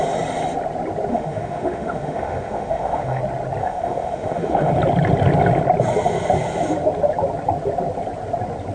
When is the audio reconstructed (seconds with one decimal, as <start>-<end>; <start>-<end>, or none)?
1.1-3.2; 3.6-4.7